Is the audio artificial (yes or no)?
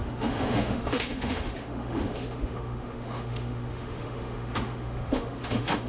yes